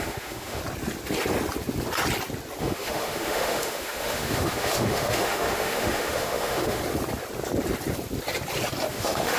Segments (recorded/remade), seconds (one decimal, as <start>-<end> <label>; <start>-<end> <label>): 0.0-0.6 remade; 0.6-2.6 recorded; 2.6-6.8 remade; 6.8-8.9 recorded; 8.9-9.4 remade